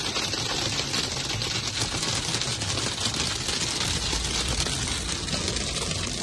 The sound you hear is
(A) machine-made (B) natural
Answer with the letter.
B